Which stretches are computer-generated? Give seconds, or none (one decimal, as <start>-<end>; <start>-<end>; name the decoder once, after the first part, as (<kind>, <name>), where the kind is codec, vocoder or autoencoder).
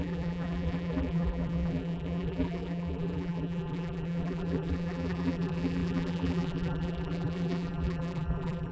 0.0-8.7 (vocoder, BigVGAN v2)